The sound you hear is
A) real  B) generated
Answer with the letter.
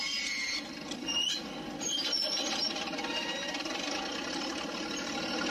A